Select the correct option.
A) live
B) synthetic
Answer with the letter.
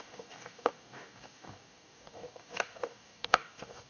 B